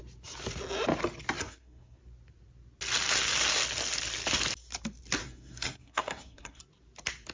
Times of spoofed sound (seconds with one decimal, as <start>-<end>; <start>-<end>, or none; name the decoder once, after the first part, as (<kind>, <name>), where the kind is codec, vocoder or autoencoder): 1.4-2.0 (codec, SNAC); 5.2-6.6